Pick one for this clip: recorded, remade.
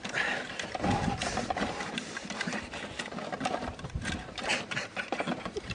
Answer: recorded